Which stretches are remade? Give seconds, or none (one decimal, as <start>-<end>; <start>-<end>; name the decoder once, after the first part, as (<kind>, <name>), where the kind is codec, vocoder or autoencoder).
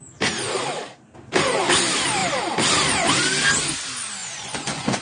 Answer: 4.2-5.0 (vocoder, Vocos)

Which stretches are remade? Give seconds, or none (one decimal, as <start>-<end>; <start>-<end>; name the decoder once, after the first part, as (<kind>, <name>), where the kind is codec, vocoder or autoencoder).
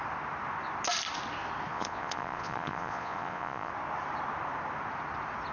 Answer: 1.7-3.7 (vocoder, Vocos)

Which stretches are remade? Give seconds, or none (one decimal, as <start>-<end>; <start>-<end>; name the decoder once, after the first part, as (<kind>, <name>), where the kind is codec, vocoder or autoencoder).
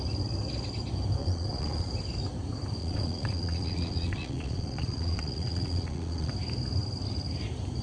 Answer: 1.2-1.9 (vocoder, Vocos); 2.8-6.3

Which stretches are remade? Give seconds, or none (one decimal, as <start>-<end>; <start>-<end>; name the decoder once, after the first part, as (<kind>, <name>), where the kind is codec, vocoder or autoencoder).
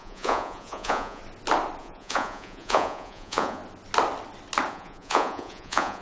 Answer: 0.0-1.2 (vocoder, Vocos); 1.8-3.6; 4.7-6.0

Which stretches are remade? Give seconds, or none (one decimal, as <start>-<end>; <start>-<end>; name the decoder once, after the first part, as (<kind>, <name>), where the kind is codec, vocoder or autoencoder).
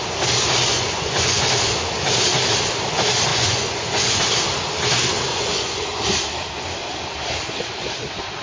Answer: 0.7-1.4 (vocoder, Vocos); 3.3-4.2; 5.3-6.0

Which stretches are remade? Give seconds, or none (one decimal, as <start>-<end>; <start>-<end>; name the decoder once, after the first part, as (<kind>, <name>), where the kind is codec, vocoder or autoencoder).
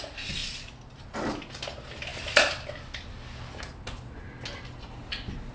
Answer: none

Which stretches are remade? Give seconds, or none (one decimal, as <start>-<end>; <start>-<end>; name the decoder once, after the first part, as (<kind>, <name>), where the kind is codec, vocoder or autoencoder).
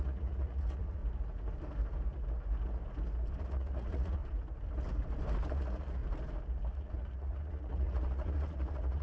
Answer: 0.0-1.0 (vocoder, Vocos); 3.4-4.2; 5.5-6.0; 6.7-9.0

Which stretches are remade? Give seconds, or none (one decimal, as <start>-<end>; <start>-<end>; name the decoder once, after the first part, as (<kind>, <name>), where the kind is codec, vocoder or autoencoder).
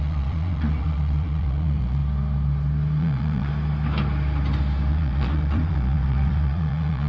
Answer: 0.0-2.0 (vocoder, Vocos); 3.0-3.5; 4.9-7.1